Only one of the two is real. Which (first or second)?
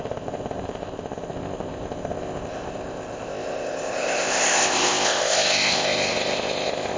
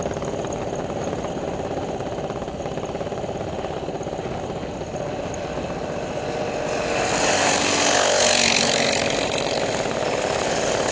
second